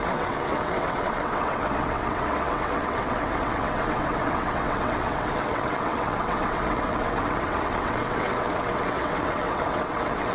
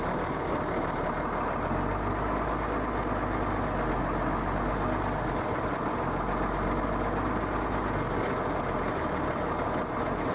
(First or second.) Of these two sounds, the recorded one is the second